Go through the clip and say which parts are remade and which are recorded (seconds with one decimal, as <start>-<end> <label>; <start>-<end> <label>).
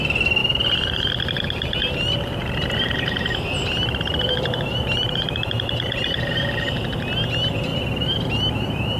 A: 0.0-0.4 recorded; 0.4-1.1 remade; 1.1-2.4 recorded; 2.4-7.0 remade; 7.0-7.7 recorded; 7.7-9.0 remade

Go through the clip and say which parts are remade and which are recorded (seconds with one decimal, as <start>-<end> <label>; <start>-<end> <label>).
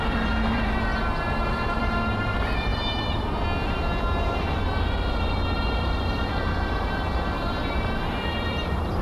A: 0.0-0.9 remade; 0.9-1.5 recorded; 1.5-2.7 remade; 2.7-5.1 recorded; 5.1-9.0 remade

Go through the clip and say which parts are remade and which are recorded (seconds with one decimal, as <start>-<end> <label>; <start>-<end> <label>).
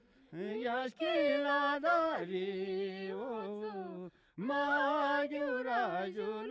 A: 0.0-0.5 recorded; 0.5-1.3 remade; 1.3-1.9 recorded; 1.9-5.4 remade; 5.4-6.5 recorded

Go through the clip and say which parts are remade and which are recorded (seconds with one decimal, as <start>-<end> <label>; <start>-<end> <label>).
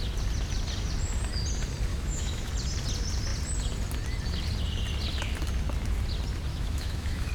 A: 0.0-1.9 recorded; 1.9-2.5 remade; 2.5-6.5 recorded; 6.5-7.3 remade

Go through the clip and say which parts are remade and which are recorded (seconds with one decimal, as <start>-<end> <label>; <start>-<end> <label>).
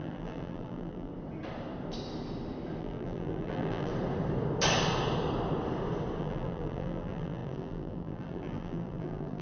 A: 0.0-1.1 remade; 1.1-2.8 recorded; 2.8-3.9 remade; 3.9-6.2 recorded; 6.2-9.4 remade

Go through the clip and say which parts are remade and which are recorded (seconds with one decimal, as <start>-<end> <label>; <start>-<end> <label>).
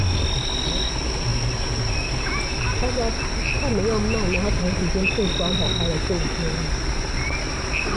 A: 0.0-8.0 recorded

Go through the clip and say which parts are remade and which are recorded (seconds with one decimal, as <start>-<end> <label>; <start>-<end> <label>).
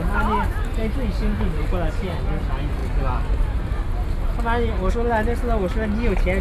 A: 0.0-6.4 recorded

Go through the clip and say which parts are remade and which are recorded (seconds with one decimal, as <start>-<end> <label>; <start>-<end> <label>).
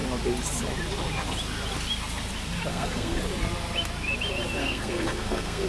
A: 0.0-2.7 recorded; 2.7-3.2 remade; 3.2-4.6 recorded; 4.6-5.7 remade